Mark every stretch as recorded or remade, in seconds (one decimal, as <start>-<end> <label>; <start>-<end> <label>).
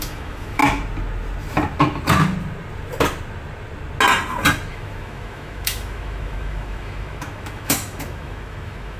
0.0-0.6 remade; 0.6-4.7 recorded; 4.7-9.0 remade